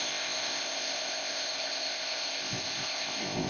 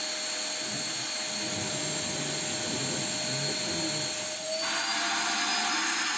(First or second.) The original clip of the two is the second